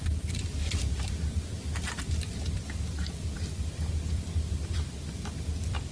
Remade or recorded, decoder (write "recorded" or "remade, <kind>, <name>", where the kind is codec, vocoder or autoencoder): remade, vocoder, BigVGAN v2